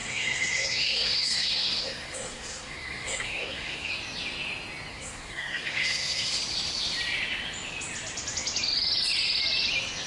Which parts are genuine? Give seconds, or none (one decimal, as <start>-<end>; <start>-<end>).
3.9-4.9; 6.4-10.1